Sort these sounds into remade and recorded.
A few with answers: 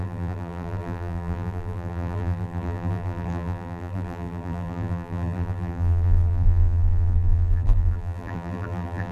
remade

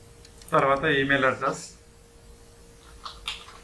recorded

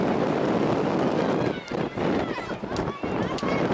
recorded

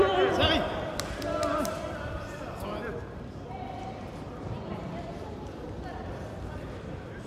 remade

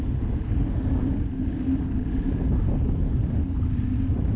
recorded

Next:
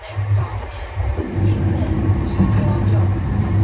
remade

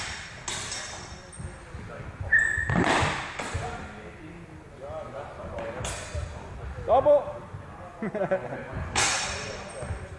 recorded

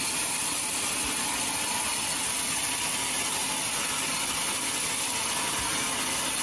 recorded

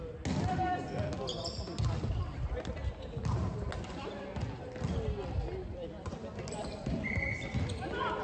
recorded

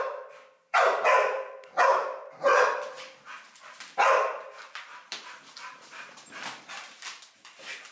remade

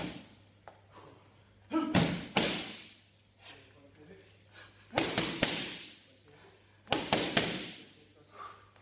recorded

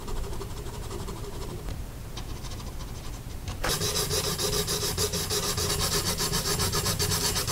remade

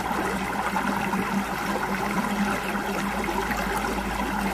recorded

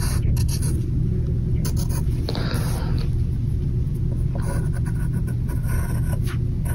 recorded